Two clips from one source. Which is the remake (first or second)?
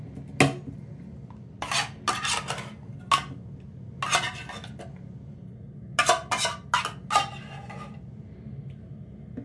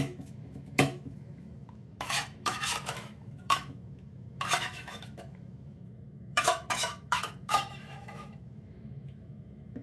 second